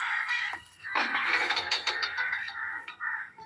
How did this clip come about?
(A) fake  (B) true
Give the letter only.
A